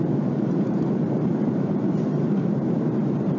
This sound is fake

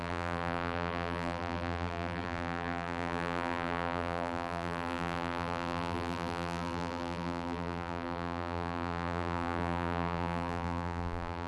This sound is fake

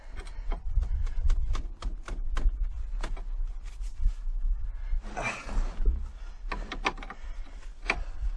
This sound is real